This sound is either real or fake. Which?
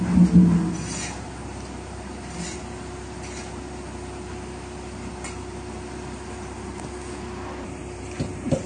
real